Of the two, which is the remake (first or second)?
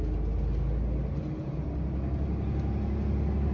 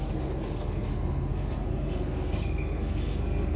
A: second